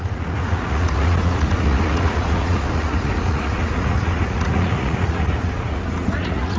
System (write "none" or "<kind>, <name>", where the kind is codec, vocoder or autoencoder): vocoder, Vocos